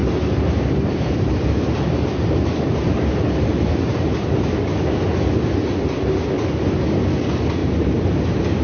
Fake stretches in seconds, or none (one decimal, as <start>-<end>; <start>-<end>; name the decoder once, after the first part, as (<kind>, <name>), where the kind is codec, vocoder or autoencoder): 0.0-4.3 (vocoder, BigVGAN v2); 7.6-8.6